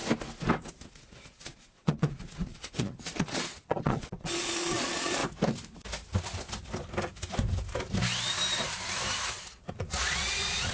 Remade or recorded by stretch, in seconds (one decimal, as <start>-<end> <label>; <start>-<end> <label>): 0.0-0.9 recorded; 0.9-5.2 remade; 5.2-9.7 recorded; 9.7-10.7 remade